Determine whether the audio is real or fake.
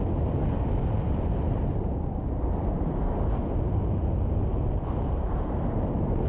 real